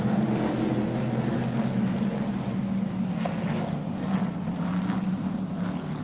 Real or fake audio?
real